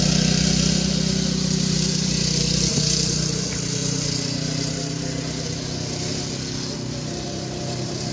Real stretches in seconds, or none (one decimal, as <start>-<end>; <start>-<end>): 0.0-8.1